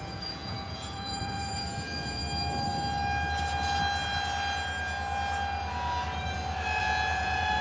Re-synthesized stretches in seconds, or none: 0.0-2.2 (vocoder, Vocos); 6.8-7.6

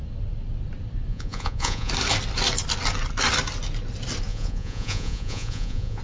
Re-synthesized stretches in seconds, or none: 1.1-1.9 (vocoder, Vocos); 4.3-6.0

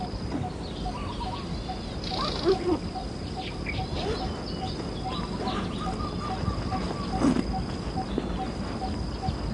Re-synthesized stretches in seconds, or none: none

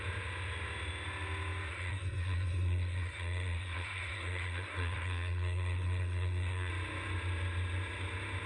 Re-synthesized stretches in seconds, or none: 1.7-6.7 (codec, SNAC)